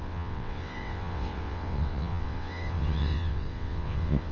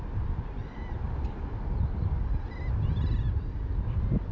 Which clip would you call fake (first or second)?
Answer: first